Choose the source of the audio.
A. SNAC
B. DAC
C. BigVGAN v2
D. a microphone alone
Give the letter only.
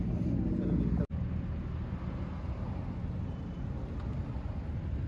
D